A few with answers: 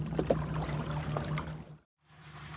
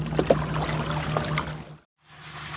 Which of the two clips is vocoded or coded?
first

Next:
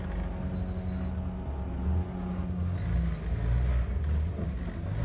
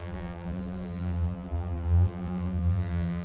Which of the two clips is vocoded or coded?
second